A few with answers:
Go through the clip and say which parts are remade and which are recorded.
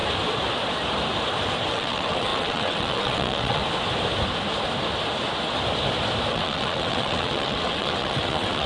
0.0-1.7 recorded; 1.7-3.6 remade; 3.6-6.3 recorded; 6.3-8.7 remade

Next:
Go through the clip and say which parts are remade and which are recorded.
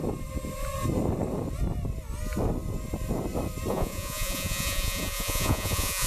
0.0-3.7 recorded; 3.7-6.1 remade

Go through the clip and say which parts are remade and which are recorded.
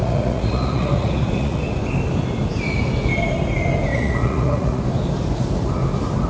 0.0-1.6 remade; 1.6-3.9 recorded; 3.9-4.8 remade; 4.8-6.3 recorded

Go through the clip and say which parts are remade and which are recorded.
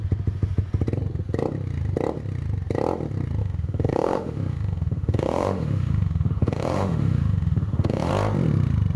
0.0-3.4 recorded; 3.4-8.1 remade; 8.1-9.0 recorded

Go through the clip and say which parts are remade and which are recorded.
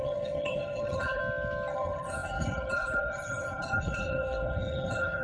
0.0-1.2 remade; 1.2-1.7 recorded; 1.7-5.2 remade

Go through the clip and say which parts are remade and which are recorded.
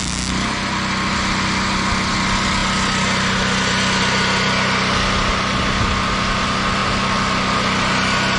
0.0-8.4 recorded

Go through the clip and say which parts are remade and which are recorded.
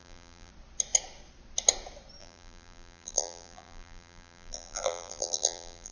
0.0-0.5 remade; 0.5-2.2 recorded; 2.2-5.9 remade